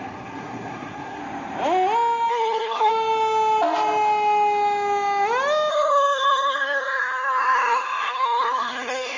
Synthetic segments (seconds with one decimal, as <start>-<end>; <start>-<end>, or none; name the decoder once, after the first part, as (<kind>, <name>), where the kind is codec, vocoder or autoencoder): 0.0-1.2 (codec, SNAC); 2.3-2.9; 5.7-9.2